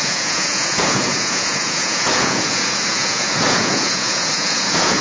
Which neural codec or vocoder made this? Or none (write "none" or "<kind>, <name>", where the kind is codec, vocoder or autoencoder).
vocoder, Vocos